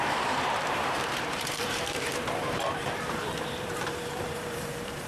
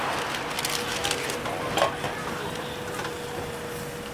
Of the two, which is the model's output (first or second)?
first